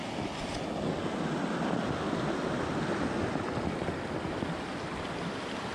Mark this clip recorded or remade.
recorded